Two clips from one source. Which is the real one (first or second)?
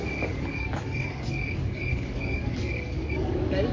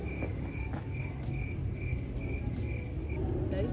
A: second